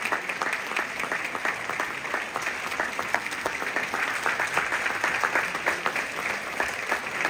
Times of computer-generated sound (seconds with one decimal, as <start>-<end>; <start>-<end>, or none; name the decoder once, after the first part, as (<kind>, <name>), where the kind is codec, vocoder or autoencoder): 3.1-3.6 (codec, SNAC)